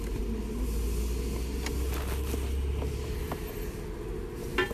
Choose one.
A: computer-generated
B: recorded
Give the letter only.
B